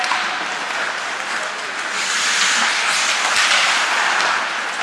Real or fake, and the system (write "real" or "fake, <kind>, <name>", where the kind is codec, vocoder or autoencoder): real